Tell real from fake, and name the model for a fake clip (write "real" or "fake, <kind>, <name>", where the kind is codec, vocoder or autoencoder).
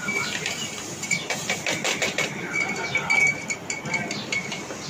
real